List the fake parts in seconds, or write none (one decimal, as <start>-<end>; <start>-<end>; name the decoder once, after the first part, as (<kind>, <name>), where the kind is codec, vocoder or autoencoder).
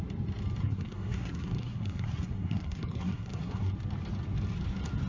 0.6-3.7 (codec, SNAC)